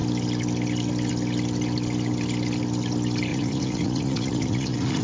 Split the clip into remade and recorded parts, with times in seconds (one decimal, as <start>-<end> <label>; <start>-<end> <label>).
0.0-3.3 recorded; 3.3-5.0 remade